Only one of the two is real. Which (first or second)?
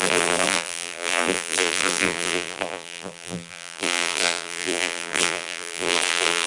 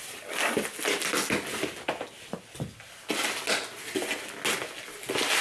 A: second